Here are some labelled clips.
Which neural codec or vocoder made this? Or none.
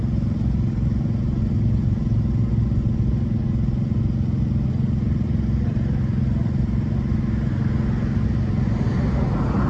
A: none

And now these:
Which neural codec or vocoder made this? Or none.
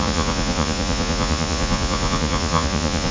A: vocoder, Vocos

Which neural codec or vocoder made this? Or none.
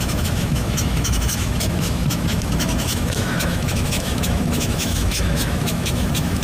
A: autoencoder, DAC-VAE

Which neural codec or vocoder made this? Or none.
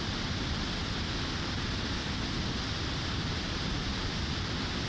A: none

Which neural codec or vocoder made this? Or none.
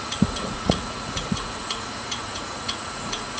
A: vocoder, Vocos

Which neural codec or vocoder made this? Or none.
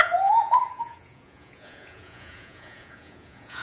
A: vocoder, Vocos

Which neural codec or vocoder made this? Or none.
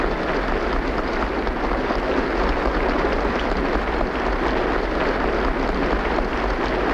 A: none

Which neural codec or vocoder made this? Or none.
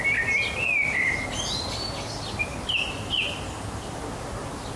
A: none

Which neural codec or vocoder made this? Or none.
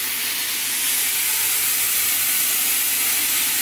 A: none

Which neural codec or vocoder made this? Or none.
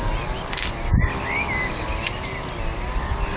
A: vocoder, BigVGAN v2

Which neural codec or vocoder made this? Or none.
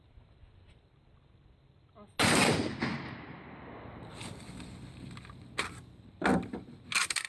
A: none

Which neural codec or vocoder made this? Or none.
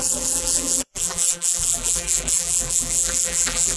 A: vocoder, BigVGAN v2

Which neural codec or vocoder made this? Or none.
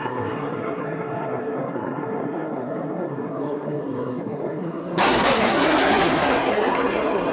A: codec, SNAC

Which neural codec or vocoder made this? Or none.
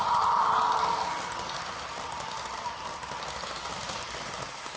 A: none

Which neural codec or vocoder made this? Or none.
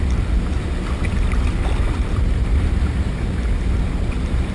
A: none